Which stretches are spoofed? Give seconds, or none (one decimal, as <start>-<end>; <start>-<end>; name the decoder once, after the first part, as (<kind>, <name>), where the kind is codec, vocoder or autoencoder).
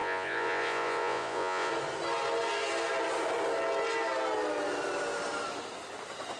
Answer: 0.0-1.7 (vocoder, Vocos)